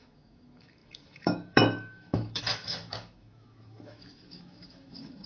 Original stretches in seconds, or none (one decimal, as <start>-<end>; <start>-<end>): none